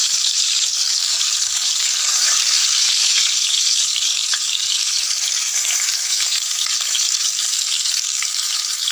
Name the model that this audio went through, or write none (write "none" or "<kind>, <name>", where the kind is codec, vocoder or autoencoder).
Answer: codec, DAC